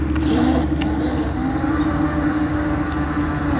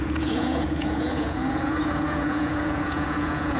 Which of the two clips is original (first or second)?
first